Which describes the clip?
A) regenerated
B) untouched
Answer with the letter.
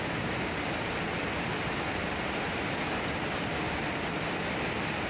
B